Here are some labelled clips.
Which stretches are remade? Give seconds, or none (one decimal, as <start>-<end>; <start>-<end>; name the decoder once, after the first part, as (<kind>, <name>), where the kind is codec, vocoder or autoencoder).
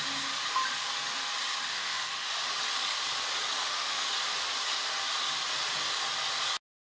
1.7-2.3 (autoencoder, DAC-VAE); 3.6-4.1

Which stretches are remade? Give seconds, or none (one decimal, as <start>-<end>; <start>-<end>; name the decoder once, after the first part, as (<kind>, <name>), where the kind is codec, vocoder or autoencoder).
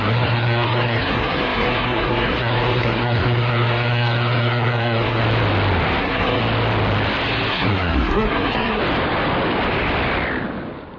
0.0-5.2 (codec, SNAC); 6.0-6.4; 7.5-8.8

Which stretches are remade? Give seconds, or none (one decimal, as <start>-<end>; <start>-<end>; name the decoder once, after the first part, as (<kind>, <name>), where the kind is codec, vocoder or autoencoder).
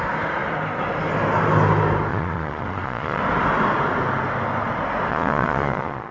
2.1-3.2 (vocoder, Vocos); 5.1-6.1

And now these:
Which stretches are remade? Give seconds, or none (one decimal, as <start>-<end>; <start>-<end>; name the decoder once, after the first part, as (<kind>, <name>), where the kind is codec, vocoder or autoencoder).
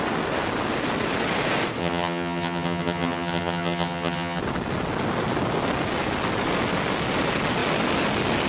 1.8-4.4 (vocoder, HiFi-GAN)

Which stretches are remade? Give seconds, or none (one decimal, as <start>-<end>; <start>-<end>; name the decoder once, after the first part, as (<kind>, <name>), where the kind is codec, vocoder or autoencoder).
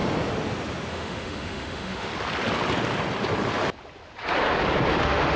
0.9-2.1 (autoencoder, DAC-VAE); 5.0-5.4